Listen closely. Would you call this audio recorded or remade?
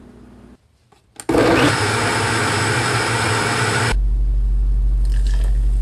recorded